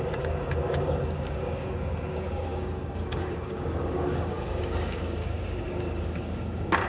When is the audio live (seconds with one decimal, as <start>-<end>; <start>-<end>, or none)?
none